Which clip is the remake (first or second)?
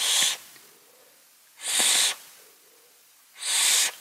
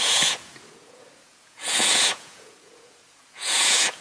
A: second